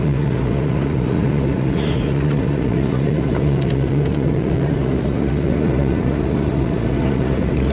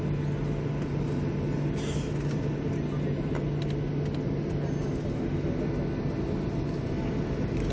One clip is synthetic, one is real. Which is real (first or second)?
second